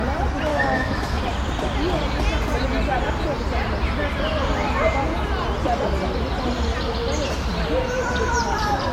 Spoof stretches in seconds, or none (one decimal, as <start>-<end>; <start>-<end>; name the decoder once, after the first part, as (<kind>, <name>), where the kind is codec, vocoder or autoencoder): 0.5-1.2 (autoencoder, DAC-VAE)